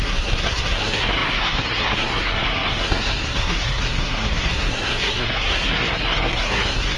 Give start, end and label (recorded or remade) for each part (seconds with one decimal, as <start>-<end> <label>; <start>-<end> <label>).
0.0-7.0 remade